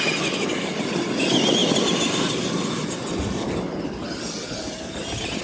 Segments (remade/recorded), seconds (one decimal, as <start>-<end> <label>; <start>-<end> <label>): 0.0-5.4 recorded